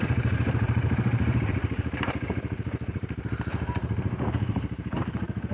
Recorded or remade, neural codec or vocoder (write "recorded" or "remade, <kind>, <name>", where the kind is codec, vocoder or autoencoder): remade, vocoder, BigVGAN v2